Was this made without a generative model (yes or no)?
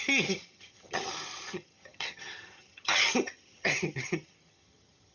no